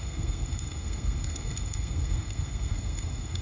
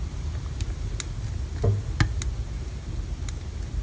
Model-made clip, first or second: first